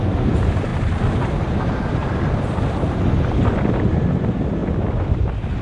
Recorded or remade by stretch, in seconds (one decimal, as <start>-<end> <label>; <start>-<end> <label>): 0.0-5.6 recorded